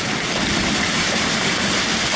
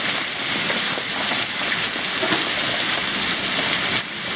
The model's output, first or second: first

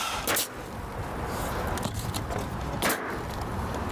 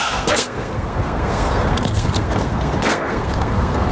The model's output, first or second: second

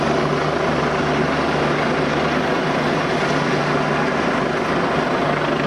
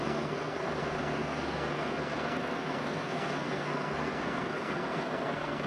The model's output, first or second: second